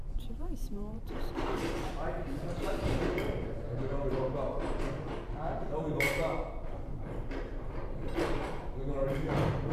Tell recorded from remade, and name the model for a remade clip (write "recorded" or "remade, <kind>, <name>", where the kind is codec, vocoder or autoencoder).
remade, vocoder, BigVGAN v2